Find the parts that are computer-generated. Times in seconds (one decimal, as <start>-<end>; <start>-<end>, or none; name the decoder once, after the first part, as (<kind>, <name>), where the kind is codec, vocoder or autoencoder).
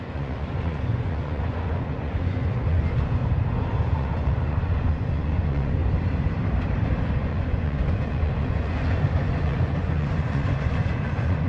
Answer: 0.0-3.2 (vocoder, Vocos); 3.8-5.8; 7.0-11.5